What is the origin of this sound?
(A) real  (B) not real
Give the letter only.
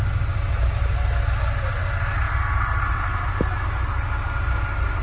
A